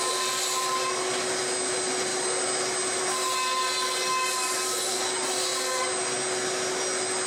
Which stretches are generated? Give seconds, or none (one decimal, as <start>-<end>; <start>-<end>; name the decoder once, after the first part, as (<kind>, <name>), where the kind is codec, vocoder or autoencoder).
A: none

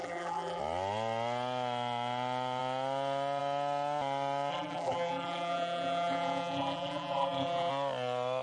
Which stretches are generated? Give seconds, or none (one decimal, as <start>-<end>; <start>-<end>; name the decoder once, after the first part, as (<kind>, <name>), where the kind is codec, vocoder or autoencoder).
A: 0.0-0.6 (vocoder, BigVGAN v2); 4.5-7.7

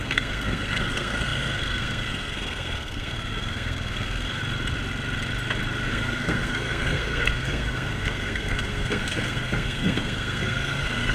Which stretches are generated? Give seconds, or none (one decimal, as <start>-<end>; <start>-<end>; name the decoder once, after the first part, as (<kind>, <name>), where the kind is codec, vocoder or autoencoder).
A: 0.0-4.4 (codec, SNAC); 5.9-11.1

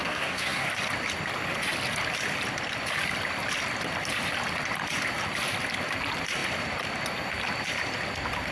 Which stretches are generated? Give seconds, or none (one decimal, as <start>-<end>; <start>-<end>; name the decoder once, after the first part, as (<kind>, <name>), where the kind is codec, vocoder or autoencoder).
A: 0.0-0.7 (codec, SNAC)

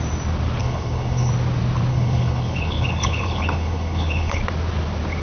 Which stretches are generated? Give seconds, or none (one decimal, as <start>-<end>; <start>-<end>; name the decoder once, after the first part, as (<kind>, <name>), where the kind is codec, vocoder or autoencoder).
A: 0.6-1.3 (codec, HILCodec); 1.9-4.4

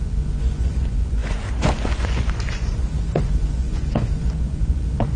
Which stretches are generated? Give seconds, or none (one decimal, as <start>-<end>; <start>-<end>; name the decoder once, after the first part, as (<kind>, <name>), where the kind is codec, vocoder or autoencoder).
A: 0.0-5.2 (vocoder, Vocos)

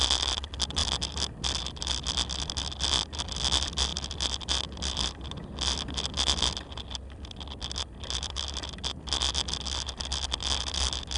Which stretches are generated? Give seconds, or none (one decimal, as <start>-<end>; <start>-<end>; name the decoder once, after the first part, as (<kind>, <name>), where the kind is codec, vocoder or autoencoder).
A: none